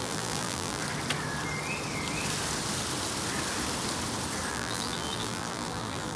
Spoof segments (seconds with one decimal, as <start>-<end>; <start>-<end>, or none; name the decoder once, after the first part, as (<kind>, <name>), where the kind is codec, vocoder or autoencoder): 0.0-0.8 (vocoder, BigVGAN v2); 4.5-6.2